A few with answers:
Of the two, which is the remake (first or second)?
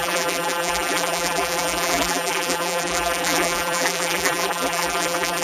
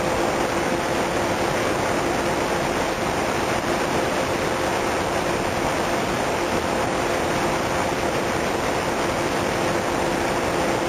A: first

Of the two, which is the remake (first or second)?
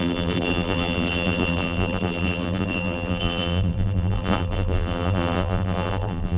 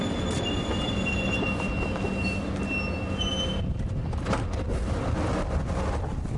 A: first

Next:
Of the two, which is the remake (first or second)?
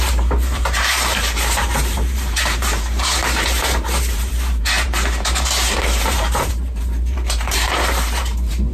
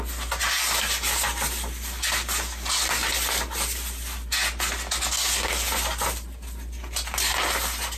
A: first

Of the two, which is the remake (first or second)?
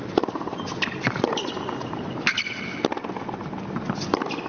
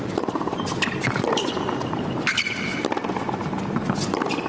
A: second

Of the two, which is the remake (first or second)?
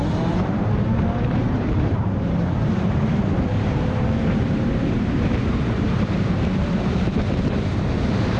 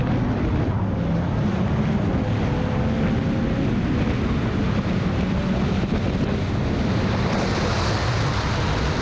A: first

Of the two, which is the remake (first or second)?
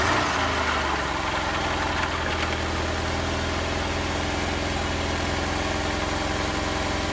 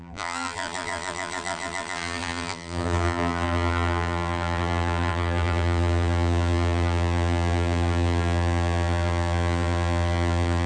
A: second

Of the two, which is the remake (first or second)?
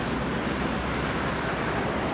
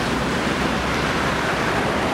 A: second